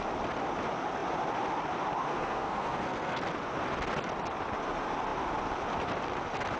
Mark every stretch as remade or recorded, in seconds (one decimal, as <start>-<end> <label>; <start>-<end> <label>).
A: 0.0-2.1 recorded; 2.1-3.2 remade; 3.2-6.6 recorded